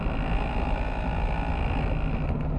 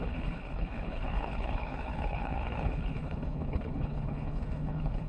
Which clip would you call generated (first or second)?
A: second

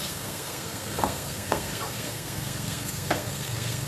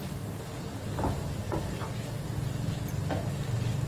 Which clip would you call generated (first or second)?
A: first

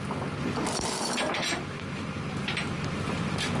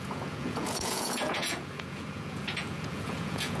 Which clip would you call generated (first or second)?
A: second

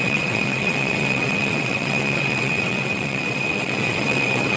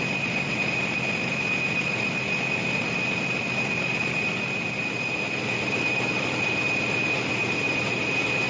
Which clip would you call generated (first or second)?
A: first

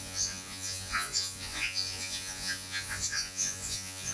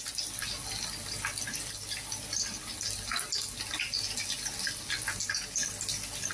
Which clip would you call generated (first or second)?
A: first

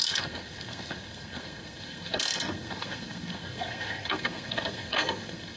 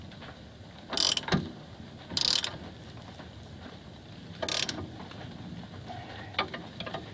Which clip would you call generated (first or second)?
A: first